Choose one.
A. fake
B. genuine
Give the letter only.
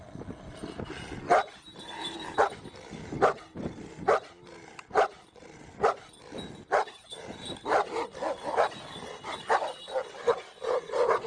B